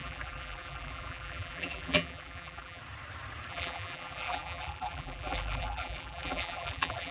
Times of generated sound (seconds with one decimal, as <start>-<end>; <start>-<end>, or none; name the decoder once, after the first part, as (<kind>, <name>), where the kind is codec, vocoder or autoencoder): 0.0-2.8 (vocoder, BigVGAN v2); 3.5-7.1

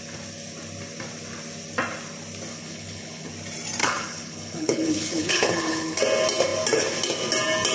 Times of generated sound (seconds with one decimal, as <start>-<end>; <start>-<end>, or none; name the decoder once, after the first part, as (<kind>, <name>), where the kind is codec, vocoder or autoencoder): 2.5-3.3 (codec, HILCodec); 3.8-6.0

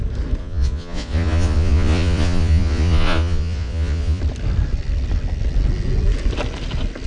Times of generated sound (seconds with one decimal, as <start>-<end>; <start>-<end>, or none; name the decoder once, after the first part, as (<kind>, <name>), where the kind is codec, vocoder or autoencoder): 0.4-4.2 (vocoder, Vocos)

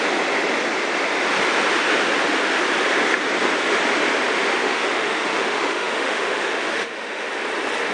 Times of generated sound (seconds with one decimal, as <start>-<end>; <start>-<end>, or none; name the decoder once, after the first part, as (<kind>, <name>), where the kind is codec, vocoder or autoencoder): 4.6-7.3 (autoencoder, DAC-VAE)

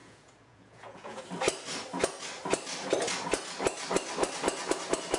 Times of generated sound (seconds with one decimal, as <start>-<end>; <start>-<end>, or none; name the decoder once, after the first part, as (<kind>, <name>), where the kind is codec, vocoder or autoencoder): 0.0-1.2 (vocoder, Vocos)

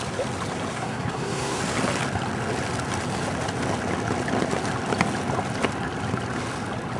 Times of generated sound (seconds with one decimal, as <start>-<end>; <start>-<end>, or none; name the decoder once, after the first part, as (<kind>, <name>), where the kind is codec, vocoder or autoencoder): 0.7-1.6 (codec, SNAC)